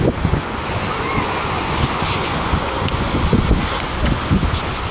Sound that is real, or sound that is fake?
fake